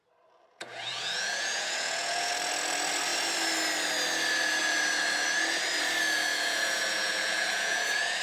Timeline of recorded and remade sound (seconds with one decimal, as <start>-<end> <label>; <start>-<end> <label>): 0.0-0.5 recorded; 0.5-2.3 remade; 2.3-6.3 recorded; 6.3-8.2 remade